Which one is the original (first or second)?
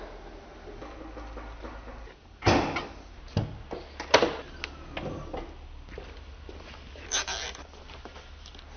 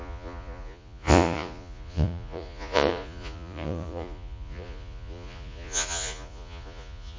first